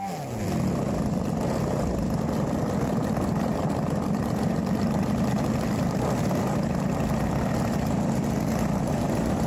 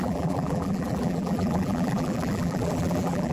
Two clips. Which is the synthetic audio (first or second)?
second